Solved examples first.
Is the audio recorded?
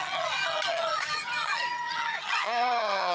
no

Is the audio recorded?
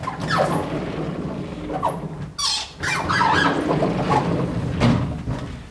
yes